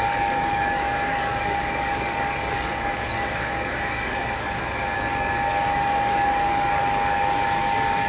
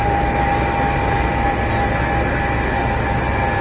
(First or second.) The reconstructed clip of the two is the first